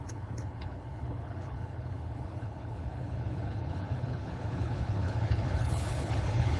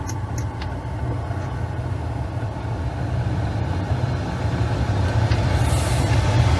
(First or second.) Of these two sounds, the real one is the second